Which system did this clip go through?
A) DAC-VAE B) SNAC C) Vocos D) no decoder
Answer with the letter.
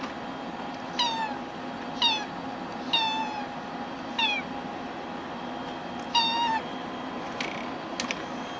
D